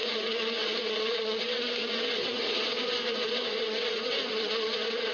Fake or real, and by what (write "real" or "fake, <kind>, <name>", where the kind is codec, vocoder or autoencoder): fake, vocoder, WaveNeXt